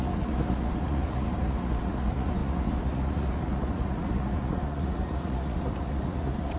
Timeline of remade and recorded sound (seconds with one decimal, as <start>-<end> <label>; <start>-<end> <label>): 0.0-6.6 remade